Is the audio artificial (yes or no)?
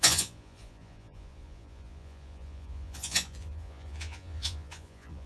yes